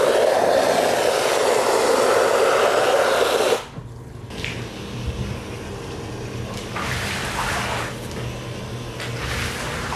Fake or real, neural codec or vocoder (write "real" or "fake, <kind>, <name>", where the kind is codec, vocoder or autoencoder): real